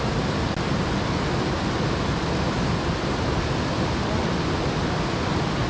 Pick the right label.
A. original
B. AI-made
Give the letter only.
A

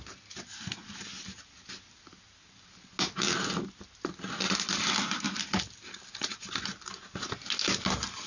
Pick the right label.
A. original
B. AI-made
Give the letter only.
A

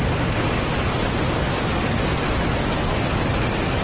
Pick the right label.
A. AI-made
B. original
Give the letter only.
B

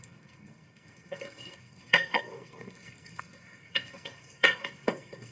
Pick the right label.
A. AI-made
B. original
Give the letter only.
A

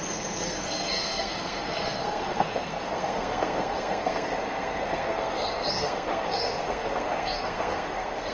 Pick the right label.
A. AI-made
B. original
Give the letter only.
A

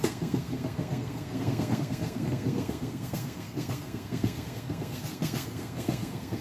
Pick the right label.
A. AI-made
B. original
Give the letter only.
A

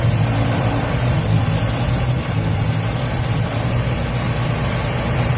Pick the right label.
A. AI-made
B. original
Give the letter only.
B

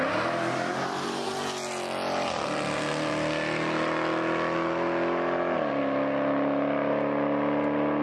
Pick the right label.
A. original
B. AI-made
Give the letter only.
A